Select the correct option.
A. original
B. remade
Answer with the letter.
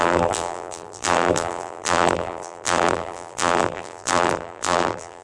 B